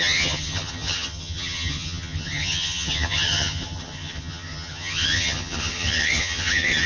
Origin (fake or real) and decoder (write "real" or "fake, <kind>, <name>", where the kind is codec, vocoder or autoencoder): fake, vocoder, HiFi-GAN